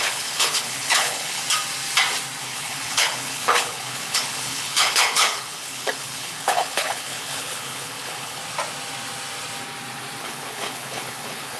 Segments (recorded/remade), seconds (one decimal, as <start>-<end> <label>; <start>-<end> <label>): 0.0-1.4 remade; 1.4-2.4 recorded; 2.4-8.4 remade; 8.4-10.2 recorded; 10.2-11.6 remade